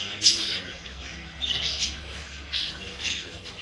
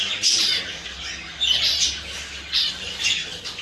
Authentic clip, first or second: second